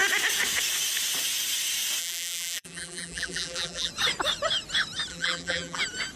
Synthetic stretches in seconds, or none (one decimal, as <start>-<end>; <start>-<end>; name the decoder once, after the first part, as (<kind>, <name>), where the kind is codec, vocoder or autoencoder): 2.0-3.9 (vocoder, BigVGAN v2); 5.1-5.8